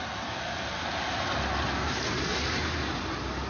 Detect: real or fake real